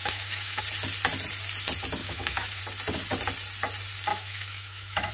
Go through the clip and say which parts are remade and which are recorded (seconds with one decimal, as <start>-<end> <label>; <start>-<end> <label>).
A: 0.0-0.6 remade; 0.6-2.0 recorded; 2.0-2.6 remade; 2.6-4.1 recorded; 4.1-5.1 remade